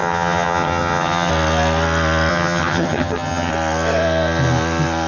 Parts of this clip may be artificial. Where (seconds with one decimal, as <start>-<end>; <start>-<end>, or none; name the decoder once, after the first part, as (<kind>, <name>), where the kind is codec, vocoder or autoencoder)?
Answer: 0.0-1.3 (vocoder, HiFi-GAN); 2.3-3.5